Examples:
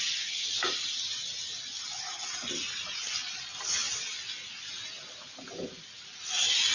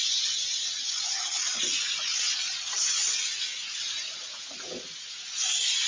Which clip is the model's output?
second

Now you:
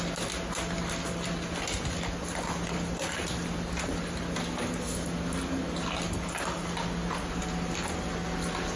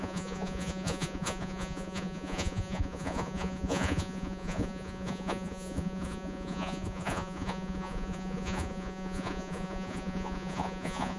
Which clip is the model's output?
second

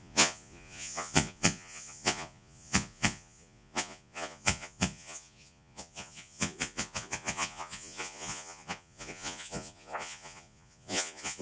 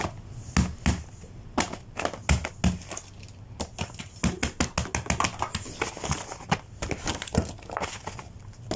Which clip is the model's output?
first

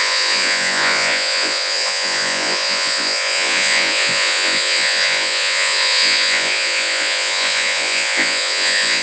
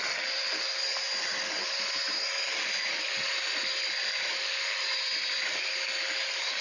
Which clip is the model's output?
first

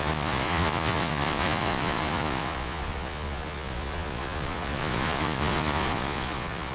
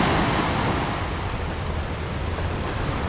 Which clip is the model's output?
first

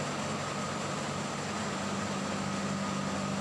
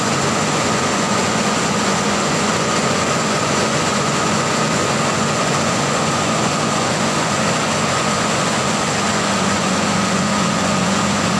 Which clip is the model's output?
second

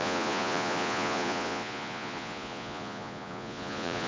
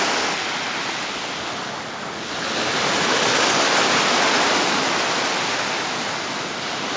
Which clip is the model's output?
first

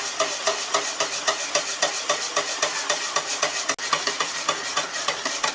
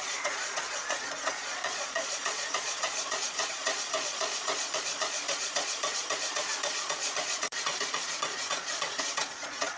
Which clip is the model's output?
second